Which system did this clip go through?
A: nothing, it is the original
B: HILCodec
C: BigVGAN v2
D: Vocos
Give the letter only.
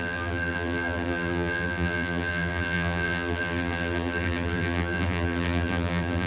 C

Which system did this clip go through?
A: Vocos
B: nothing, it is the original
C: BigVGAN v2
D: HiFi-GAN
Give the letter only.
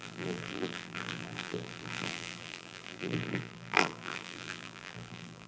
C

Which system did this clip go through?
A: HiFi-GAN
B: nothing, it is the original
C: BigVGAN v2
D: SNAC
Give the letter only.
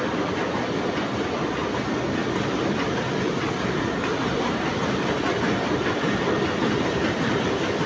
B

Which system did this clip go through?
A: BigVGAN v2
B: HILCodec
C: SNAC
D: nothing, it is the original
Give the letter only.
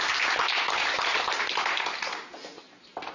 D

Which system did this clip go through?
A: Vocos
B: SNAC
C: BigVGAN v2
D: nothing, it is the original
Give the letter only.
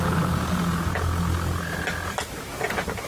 D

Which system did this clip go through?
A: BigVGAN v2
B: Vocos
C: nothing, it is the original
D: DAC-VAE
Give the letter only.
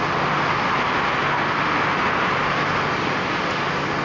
C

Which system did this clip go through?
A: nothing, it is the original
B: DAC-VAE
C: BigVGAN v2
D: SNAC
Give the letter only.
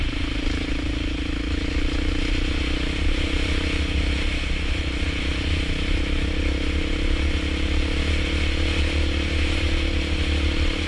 A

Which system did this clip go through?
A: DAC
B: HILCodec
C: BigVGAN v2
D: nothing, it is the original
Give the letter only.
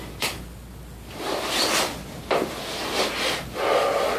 D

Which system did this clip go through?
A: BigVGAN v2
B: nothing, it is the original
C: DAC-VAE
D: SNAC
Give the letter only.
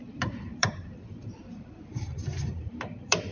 A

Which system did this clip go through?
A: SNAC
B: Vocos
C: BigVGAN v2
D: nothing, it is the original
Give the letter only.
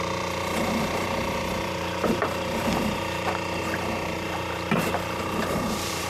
C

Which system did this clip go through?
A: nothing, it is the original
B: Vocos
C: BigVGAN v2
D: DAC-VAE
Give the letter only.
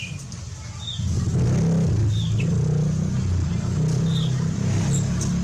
A